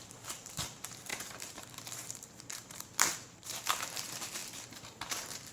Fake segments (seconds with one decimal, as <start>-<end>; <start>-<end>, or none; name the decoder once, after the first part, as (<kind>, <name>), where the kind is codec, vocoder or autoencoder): 0.0-5.5 (vocoder, BigVGAN v2)